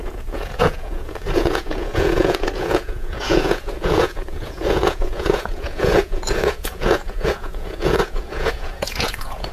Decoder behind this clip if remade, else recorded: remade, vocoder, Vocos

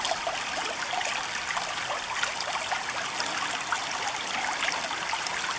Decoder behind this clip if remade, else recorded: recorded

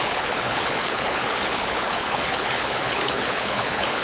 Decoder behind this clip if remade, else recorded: remade, codec, HILCodec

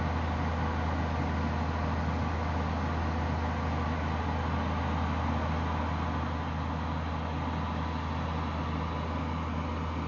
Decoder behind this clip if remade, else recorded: recorded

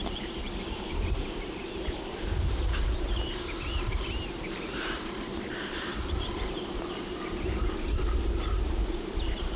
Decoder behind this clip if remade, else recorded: remade, vocoder, BigVGAN v2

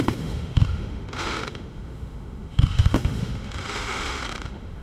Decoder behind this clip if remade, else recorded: remade, autoencoder, DAC-VAE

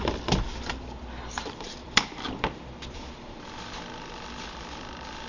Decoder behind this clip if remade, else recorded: remade, vocoder, BigVGAN v2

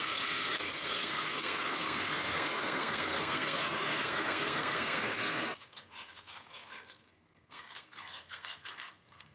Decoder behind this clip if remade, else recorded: remade, codec, SNAC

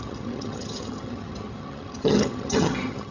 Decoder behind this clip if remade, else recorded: remade, vocoder, HiFi-GAN